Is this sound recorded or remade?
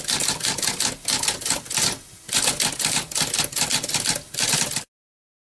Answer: recorded